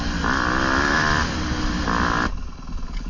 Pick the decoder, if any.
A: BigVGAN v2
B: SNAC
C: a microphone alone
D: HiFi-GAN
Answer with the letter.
C